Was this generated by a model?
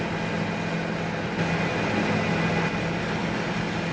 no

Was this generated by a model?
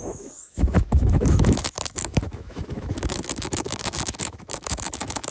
yes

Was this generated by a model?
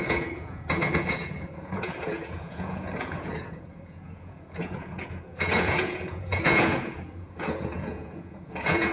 yes